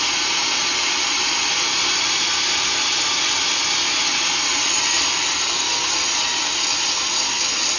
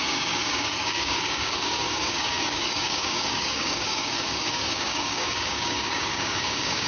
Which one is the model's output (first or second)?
second